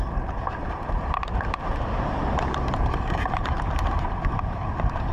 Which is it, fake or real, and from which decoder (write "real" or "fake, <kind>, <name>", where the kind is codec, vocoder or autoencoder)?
fake, vocoder, BigVGAN v2